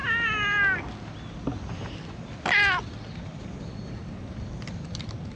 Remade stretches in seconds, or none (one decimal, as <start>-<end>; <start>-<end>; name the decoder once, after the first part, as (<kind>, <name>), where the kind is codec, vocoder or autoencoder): none